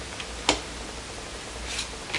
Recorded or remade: recorded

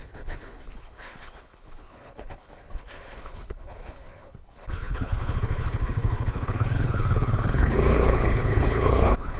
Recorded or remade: remade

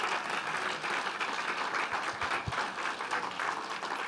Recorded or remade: recorded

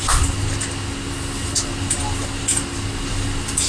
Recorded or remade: recorded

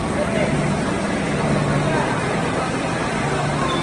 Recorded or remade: recorded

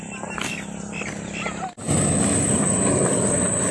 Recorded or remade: recorded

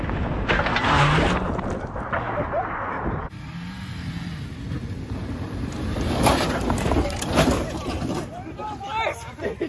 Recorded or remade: recorded